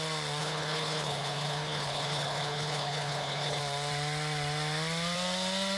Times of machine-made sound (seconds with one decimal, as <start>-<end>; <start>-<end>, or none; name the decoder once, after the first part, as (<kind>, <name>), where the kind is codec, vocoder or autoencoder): 0.4-3.6 (codec, HILCodec)